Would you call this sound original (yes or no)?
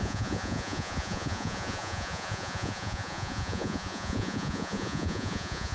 no